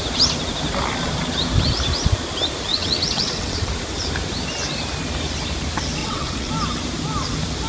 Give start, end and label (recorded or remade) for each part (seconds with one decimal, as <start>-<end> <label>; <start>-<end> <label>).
0.0-2.7 recorded; 2.7-3.7 remade; 3.7-6.0 recorded; 6.0-6.5 remade; 6.5-7.7 recorded